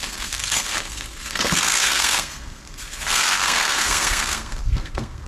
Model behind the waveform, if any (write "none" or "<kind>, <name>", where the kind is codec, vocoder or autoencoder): codec, SNAC